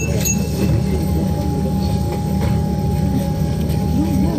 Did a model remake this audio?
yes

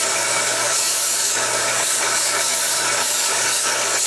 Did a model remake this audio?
yes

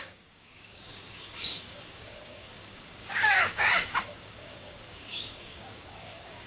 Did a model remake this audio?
yes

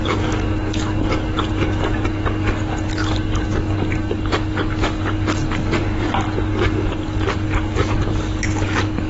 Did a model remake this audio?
yes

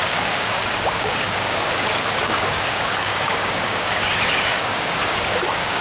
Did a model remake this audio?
yes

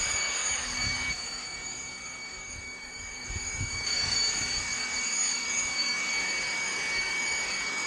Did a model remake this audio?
yes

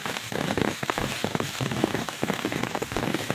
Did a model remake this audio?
yes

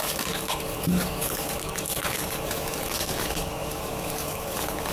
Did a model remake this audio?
yes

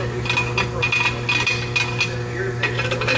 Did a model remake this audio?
no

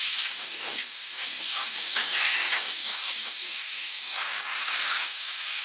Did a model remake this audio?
yes